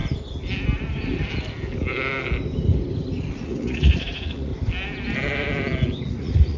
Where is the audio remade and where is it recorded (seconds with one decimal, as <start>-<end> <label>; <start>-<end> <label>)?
0.0-3.3 recorded; 3.3-4.5 remade; 4.5-6.0 recorded; 6.0-6.6 remade